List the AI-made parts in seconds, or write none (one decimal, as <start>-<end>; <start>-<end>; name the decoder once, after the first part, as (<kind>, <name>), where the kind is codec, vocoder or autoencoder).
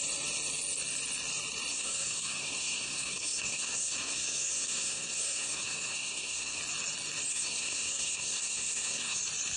1.7-6.6 (codec, SNAC); 7.3-9.2